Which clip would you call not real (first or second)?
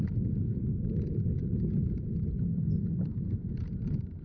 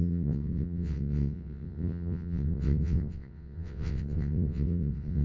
second